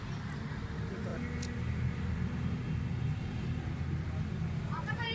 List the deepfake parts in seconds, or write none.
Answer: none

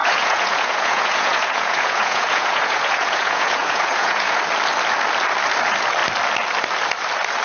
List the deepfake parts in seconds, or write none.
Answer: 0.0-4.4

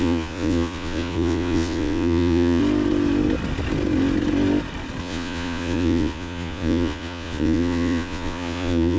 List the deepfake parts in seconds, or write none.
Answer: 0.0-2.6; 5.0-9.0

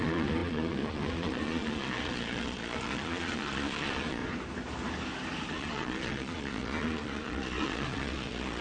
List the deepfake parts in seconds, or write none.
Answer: 0.0-4.2; 5.5-8.6

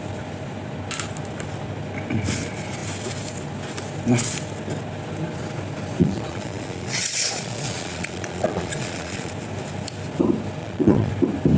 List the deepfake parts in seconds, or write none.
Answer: 6.0-9.3; 10.6-11.1

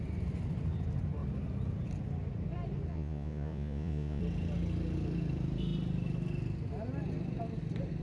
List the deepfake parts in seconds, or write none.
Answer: 2.9-4.2

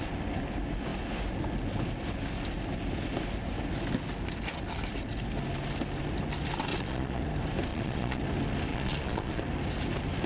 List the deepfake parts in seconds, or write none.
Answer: 6.7-7.2; 7.7-8.2; 8.7-9.4